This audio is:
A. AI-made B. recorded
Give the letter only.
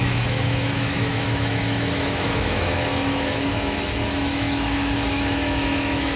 A